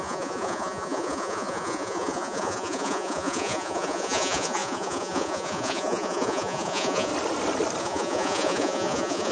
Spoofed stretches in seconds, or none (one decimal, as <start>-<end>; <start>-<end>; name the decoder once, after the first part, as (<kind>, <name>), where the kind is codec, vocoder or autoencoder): 0.0-7.1 (vocoder, Vocos); 7.8-9.3